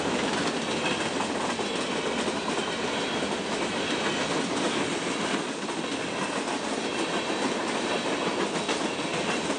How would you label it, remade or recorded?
recorded